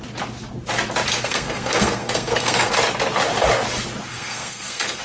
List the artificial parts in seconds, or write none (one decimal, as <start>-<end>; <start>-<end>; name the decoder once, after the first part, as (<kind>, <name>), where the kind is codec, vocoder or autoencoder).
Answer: 1.1-2.7 (codec, SNAC); 4.1-5.0